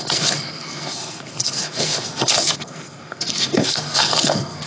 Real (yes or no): no